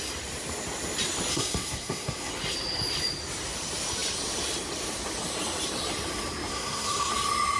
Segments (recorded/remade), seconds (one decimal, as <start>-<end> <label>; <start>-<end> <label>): 0.0-1.3 recorded; 1.3-2.3 remade; 2.3-6.5 recorded; 6.5-7.1 remade; 7.1-7.6 recorded